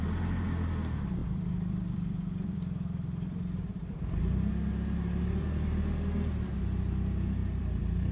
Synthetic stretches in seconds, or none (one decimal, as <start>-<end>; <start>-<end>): 1.2-4.5; 7.4-8.1